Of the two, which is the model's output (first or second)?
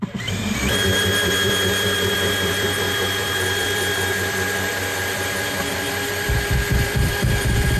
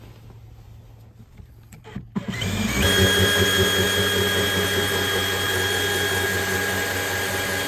first